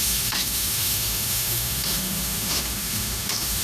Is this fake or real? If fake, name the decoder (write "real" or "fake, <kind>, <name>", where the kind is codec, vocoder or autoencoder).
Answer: fake, autoencoder, DAC-VAE